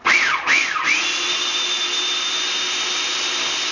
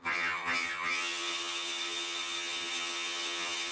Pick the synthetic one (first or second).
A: second